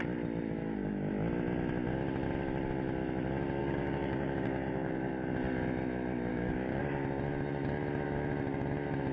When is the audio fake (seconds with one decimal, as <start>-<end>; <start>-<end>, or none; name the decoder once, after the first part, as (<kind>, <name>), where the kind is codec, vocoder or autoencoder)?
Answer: 0.6-1.1 (codec, DAC); 3.6-5.1; 6.3-6.8